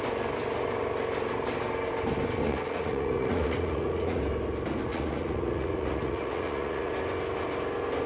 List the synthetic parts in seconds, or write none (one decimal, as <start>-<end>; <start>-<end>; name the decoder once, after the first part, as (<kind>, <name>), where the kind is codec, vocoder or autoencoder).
2.4-4.2 (vocoder, Vocos); 4.9-6.9